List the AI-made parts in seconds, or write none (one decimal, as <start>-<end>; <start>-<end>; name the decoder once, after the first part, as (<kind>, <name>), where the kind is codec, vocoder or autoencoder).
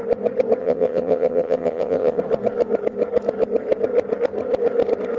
0.6-2.2 (vocoder, HiFi-GAN)